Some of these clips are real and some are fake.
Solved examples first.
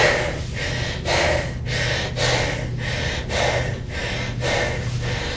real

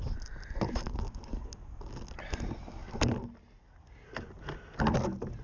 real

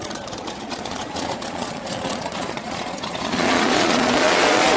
fake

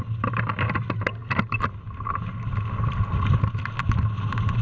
real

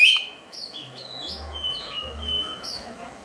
fake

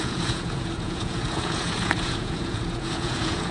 fake